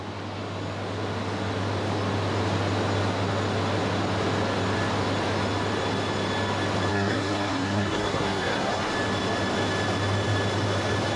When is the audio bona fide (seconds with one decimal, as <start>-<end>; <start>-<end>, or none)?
0.0-6.9; 8.9-11.2